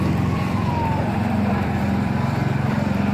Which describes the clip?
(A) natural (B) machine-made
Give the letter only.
B